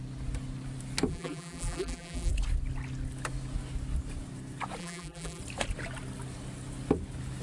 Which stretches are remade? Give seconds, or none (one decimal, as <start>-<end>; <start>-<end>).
1.1-2.3; 4.8-5.4